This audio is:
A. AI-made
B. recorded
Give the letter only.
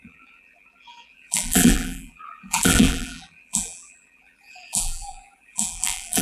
A